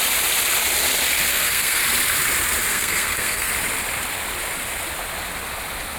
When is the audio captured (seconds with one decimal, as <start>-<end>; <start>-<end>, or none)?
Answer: 0.0-1.3; 1.8-2.7; 3.5-6.0